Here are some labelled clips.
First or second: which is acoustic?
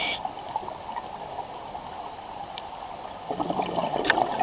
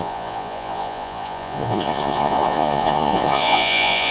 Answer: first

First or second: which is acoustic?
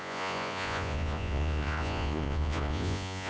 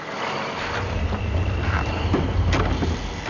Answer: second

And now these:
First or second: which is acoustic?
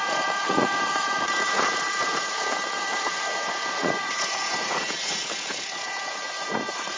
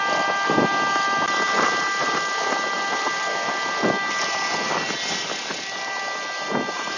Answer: second